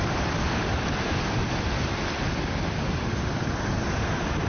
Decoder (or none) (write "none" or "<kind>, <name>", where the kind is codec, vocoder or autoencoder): none